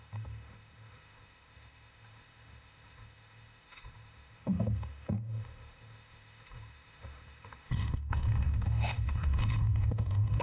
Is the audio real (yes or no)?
no